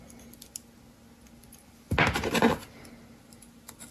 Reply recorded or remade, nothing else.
recorded